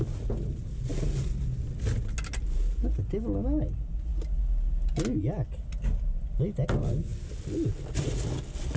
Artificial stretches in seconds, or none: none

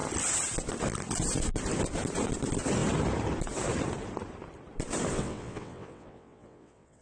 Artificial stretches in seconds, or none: 5.1-7.0 (vocoder, WaveNeXt)

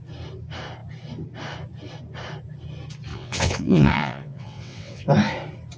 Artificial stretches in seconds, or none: 3.1-5.1 (vocoder, WaveNeXt)

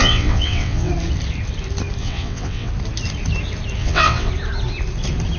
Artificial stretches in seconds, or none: 0.0-0.9 (vocoder, WaveNeXt); 2.0-2.7; 3.8-4.3

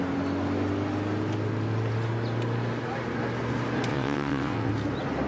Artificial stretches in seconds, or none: 3.9-4.7 (vocoder, WaveNeXt)

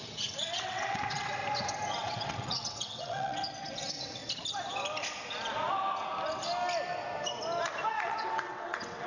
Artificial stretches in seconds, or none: 0.0-1.4 (vocoder, WaveNeXt); 1.9-4.2; 7.9-9.1

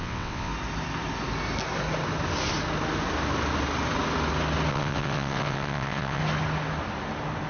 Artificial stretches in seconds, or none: 0.0-0.5 (vocoder, WaveNeXt); 4.7-6.2

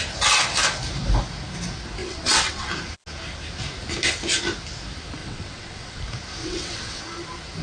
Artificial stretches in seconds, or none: 2.0-2.7 (vocoder, WaveNeXt); 5.2-6.0; 6.4-7.0